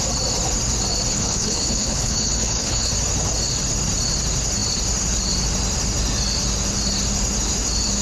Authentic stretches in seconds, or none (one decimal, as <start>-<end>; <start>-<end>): 0.0-1.1; 2.9-8.0